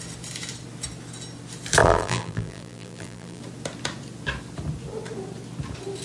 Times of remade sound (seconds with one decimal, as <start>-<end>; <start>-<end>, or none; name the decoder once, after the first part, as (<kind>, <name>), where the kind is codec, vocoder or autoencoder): 1.8-3.4 (vocoder, BigVGAN v2)